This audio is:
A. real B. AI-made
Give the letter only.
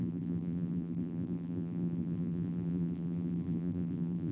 B